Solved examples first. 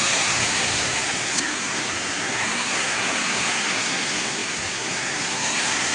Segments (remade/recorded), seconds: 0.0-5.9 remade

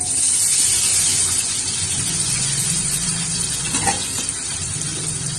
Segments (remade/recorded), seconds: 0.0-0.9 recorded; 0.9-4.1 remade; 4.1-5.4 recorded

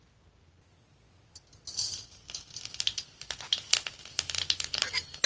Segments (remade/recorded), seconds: 0.0-5.3 recorded